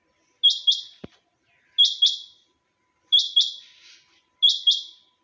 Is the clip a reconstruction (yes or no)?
no